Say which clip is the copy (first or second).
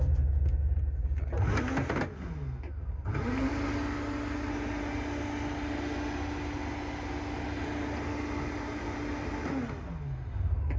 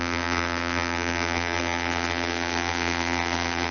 second